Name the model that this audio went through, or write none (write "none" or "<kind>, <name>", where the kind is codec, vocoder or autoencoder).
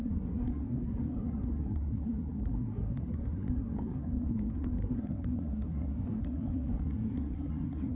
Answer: codec, SNAC